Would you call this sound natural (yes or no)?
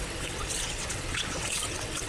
no